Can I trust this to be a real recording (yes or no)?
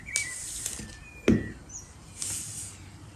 yes